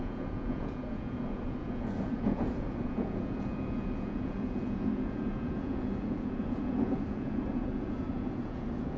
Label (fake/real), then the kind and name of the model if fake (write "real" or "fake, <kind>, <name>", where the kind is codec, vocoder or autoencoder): fake, vocoder, Vocos